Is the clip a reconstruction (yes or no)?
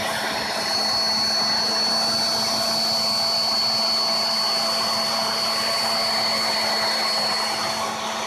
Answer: no